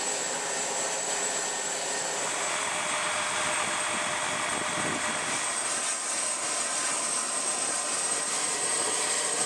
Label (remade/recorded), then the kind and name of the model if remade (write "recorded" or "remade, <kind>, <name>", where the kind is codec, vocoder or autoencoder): recorded